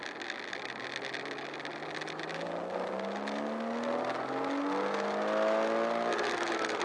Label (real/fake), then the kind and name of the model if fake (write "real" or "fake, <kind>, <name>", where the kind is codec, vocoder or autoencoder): real